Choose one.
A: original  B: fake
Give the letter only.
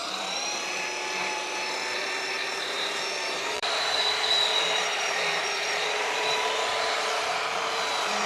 B